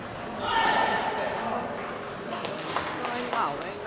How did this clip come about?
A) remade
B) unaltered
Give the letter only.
B